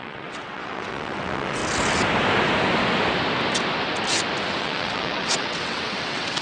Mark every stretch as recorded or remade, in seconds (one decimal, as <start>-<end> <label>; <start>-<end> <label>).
0.0-1.6 remade; 1.6-4.6 recorded; 4.6-6.4 remade